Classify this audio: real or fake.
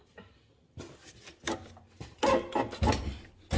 real